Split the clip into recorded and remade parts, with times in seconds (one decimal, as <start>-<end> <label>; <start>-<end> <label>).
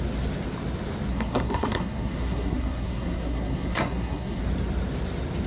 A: 0.0-1.1 recorded; 1.1-4.4 remade; 4.4-5.5 recorded